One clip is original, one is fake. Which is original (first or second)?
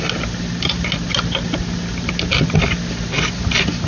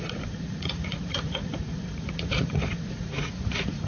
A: first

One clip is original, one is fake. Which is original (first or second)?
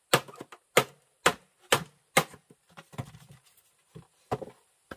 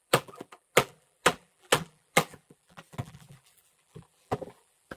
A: first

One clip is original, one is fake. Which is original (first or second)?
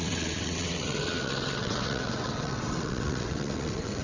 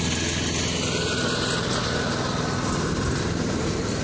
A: second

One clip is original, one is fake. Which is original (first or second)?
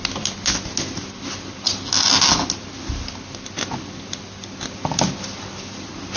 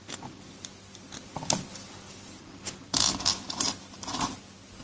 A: first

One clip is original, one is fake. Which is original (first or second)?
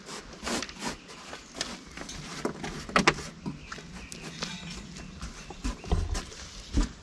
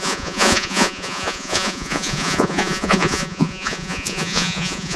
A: first